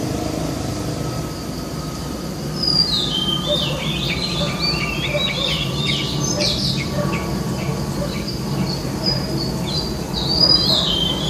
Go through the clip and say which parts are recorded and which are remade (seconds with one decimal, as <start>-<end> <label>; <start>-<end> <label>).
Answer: 0.0-11.3 remade

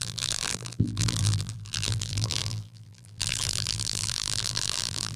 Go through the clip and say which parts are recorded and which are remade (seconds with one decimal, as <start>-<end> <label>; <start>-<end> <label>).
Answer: 0.0-5.2 remade

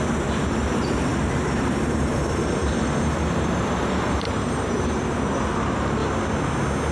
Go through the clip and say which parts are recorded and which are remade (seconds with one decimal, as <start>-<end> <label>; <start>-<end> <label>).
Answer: 0.0-6.0 remade; 6.0-6.9 recorded

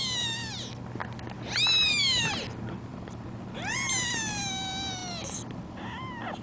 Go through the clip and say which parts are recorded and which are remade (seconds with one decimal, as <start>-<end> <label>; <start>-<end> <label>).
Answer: 0.0-6.4 recorded

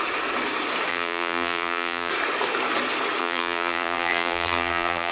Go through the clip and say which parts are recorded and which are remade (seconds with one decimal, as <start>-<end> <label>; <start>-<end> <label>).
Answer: 0.0-0.9 recorded; 0.9-2.1 remade; 2.1-3.2 recorded; 3.2-5.1 remade

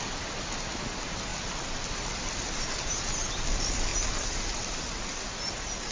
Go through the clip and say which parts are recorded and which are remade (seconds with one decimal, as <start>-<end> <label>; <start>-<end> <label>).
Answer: 0.0-5.9 recorded

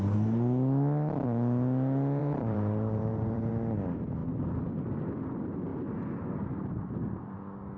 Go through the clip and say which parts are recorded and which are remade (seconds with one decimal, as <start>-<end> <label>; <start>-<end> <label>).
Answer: 0.0-2.2 recorded; 2.2-3.5 remade; 3.5-7.8 recorded

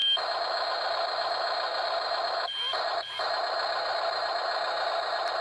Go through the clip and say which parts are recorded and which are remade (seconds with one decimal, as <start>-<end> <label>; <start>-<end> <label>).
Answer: 0.0-0.7 recorded; 0.7-5.4 remade